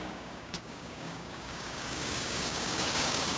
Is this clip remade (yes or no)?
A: yes